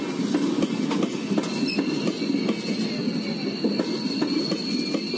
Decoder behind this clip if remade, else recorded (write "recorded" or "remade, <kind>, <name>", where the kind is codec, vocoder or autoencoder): recorded